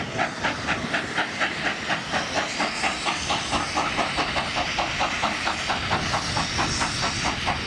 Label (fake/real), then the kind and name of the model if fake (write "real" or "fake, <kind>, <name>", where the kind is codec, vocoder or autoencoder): real